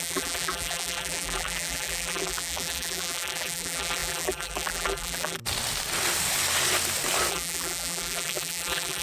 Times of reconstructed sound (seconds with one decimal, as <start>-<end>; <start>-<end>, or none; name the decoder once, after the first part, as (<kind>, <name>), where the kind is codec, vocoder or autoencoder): 0.0-5.4 (vocoder, BigVGAN v2); 7.3-9.0